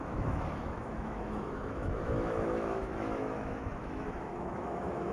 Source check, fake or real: fake